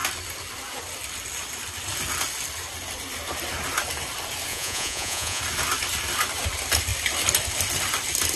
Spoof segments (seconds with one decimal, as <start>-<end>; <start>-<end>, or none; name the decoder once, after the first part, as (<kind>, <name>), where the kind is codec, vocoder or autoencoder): 4.5-5.4 (vocoder, Vocos)